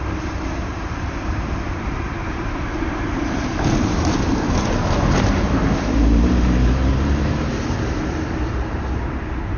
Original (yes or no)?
no